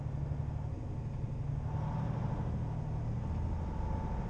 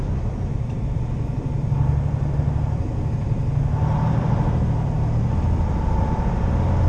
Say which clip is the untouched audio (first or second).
first